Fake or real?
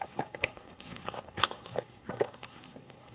fake